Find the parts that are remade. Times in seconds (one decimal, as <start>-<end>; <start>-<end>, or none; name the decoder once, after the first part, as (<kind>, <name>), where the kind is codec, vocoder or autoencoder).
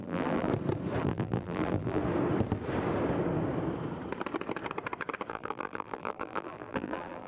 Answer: 0.0-0.5 (vocoder, BigVGAN v2); 1.0-2.0; 5.3-7.3